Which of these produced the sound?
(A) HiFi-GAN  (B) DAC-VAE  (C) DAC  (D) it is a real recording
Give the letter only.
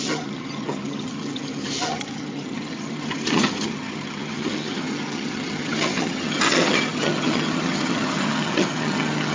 A